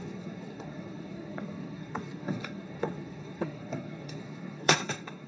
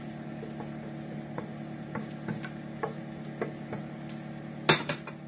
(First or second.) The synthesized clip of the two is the first